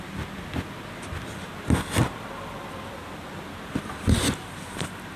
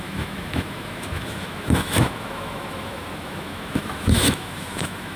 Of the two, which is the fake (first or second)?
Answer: second